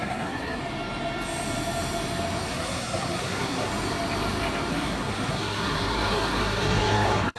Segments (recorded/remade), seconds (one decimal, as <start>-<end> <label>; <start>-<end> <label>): 0.0-0.6 remade; 0.6-2.5 recorded; 2.5-3.7 remade; 3.7-4.7 recorded; 4.7-7.4 remade